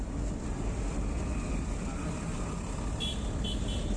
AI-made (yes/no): no